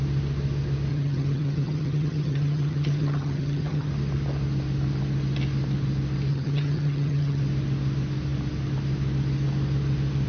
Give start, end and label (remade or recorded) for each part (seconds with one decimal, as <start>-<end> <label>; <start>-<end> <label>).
0.0-0.9 recorded; 0.9-3.9 remade; 3.9-6.3 recorded; 6.3-7.4 remade; 7.4-10.3 recorded